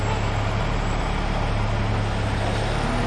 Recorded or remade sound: recorded